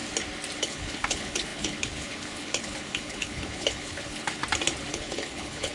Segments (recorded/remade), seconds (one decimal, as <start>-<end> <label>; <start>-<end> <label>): 0.0-0.6 recorded; 0.6-4.4 remade; 4.4-4.9 recorded; 4.9-5.7 remade